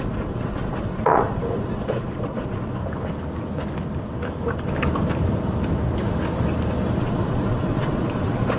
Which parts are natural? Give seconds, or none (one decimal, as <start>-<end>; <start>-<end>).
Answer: 2.8-7.0